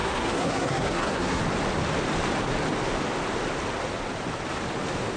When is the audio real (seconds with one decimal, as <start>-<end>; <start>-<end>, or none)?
1.4-5.2